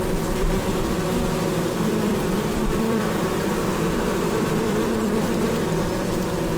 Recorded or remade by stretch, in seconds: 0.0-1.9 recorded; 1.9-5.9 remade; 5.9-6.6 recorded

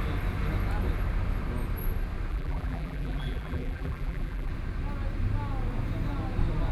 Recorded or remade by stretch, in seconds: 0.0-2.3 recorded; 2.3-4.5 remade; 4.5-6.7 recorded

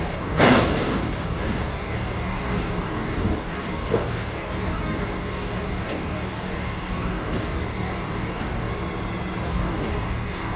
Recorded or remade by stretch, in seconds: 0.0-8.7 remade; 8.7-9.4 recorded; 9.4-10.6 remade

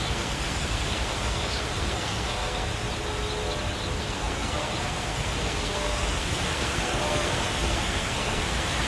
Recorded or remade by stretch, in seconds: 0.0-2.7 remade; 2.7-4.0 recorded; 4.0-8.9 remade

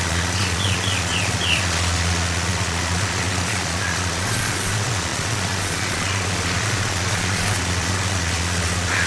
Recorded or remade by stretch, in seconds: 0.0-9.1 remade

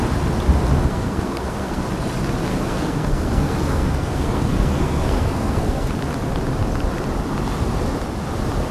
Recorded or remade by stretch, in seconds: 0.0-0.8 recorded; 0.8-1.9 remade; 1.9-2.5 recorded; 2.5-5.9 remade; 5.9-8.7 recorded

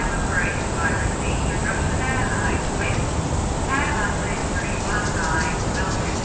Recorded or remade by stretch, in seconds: 0.0-4.4 recorded; 4.4-5.6 remade; 5.6-6.2 recorded